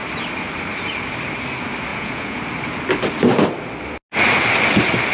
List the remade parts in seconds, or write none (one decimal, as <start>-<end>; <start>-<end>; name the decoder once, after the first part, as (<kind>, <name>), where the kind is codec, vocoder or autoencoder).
1.9-2.4 (vocoder, Vocos)